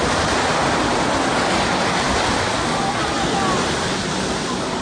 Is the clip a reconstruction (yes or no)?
no